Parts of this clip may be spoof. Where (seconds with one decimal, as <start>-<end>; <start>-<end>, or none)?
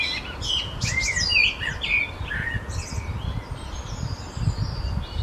none